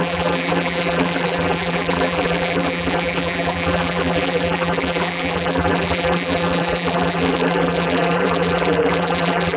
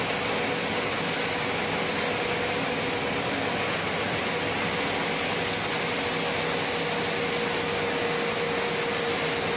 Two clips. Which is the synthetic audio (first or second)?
first